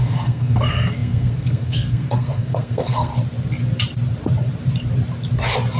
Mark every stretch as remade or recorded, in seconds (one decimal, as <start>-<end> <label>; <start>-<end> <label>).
0.0-3.1 remade; 3.1-5.8 recorded